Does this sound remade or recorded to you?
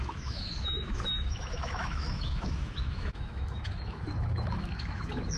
remade